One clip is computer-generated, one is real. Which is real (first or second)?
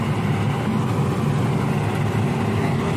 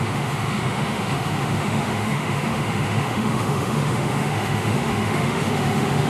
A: first